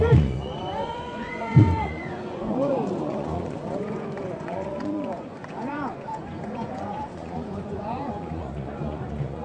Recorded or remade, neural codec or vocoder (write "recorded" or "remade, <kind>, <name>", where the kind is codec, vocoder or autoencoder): remade, vocoder, Vocos